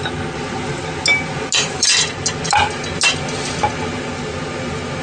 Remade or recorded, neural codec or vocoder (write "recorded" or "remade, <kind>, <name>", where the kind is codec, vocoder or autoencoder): recorded